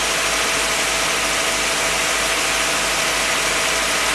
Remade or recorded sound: recorded